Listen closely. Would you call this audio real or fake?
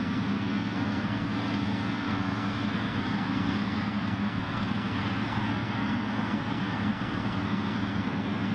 fake